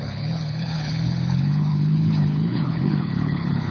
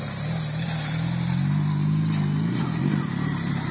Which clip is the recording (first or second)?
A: second